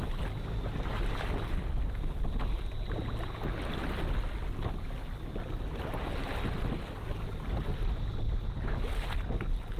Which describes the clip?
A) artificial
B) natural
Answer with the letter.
B